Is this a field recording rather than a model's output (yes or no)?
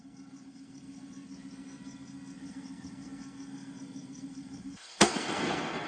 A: no